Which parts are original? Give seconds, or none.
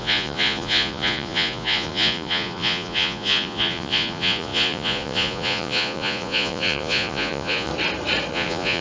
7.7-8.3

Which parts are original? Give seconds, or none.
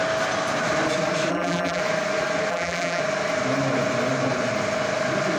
0.0-1.3; 1.8-2.5; 3.0-5.4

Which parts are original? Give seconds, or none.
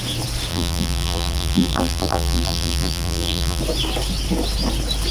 0.0-0.5; 3.6-5.1